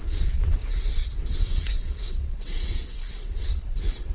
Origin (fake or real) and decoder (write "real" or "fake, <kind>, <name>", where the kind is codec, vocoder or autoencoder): fake, vocoder, WaveNeXt